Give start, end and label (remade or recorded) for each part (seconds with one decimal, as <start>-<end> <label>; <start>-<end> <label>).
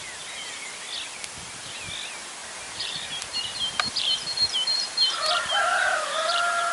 0.0-2.4 recorded; 2.4-6.7 remade